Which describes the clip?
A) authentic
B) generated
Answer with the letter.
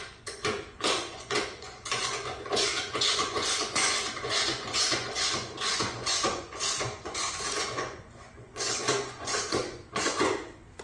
B